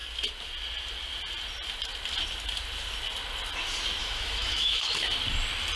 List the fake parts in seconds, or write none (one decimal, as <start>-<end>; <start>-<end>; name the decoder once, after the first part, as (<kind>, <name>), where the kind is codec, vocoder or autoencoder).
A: 4.0-5.0 (autoencoder, DAC-VAE)

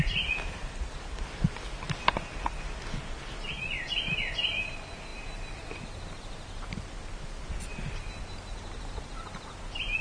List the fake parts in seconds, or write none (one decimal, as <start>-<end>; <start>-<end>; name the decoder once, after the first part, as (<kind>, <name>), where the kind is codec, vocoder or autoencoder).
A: none

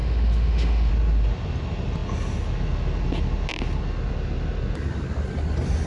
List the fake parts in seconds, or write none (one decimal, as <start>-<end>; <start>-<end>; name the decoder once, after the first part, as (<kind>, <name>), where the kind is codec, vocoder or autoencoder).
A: 0.0-0.9 (autoencoder, DAC-VAE)

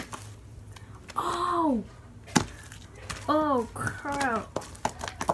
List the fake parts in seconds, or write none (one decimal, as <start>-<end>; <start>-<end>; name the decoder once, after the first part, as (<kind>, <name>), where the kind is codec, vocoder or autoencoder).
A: none